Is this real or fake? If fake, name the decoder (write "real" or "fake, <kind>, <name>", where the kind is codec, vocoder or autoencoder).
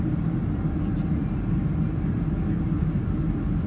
real